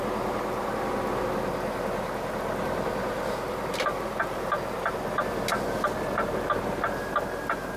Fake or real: real